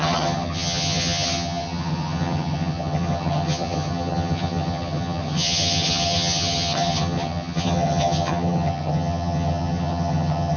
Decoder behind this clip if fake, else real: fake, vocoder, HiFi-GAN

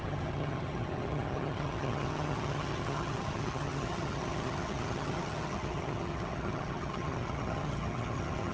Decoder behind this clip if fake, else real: fake, vocoder, HiFi-GAN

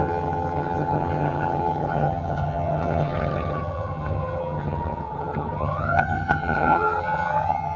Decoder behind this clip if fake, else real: fake, vocoder, HiFi-GAN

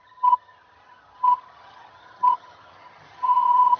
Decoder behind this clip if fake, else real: fake, vocoder, HiFi-GAN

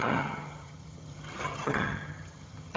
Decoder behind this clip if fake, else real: fake, vocoder, HiFi-GAN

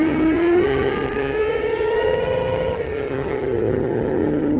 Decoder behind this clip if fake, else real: fake, vocoder, HiFi-GAN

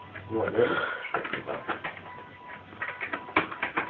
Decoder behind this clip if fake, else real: real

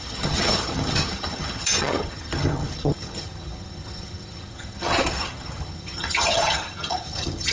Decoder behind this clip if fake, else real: fake, vocoder, HiFi-GAN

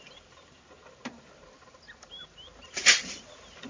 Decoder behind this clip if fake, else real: real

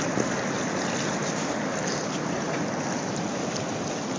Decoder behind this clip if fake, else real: real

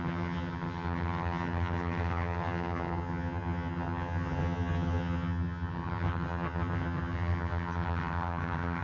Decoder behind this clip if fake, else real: fake, vocoder, HiFi-GAN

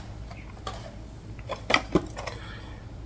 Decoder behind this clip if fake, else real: real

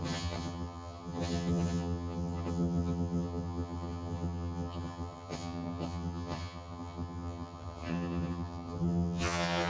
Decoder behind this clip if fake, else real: fake, vocoder, HiFi-GAN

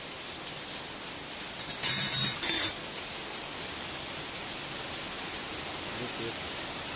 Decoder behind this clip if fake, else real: real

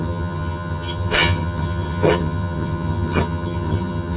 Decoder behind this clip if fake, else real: fake, vocoder, HiFi-GAN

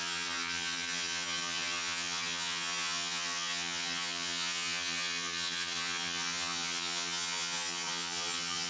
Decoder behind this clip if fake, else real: fake, vocoder, HiFi-GAN